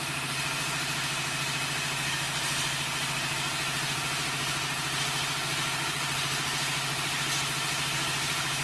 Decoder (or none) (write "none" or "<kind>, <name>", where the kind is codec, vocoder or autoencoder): none